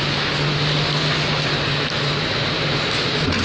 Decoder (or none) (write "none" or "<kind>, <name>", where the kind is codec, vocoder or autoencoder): none